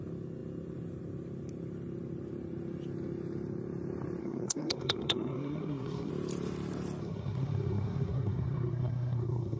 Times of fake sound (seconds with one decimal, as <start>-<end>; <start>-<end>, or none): 4.2-6.1; 7.0-9.6